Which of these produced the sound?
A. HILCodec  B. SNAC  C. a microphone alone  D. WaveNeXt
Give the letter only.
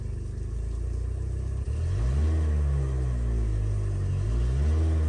C